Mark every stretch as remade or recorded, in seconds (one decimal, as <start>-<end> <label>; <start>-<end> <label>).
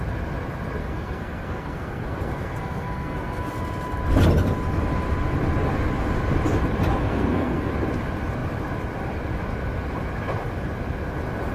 0.0-0.8 recorded; 0.8-3.5 remade; 3.5-7.0 recorded; 7.0-7.7 remade; 7.7-11.5 recorded